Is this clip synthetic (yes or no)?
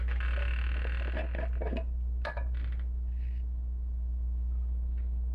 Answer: no